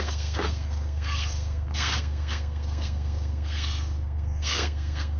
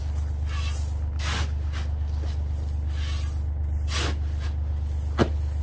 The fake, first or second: first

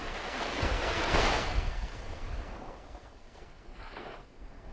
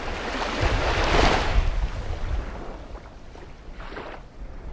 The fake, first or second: first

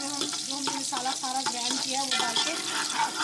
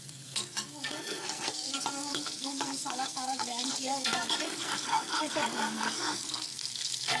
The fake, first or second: second